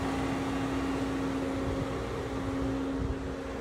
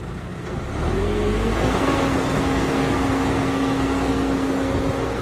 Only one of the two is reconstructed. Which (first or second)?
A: second